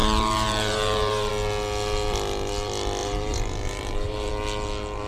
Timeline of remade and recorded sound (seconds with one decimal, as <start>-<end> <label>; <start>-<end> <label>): 0.0-1.3 remade; 1.3-3.0 recorded; 3.0-4.3 remade; 4.3-5.1 recorded